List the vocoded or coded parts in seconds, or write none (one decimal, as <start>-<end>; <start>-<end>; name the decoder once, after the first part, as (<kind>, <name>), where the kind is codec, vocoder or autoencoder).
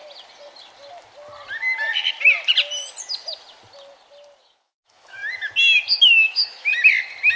4.4-5.2 (autoencoder, DAC-VAE); 6.0-6.7